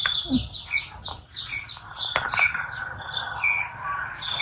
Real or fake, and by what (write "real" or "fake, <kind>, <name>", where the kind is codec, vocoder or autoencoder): real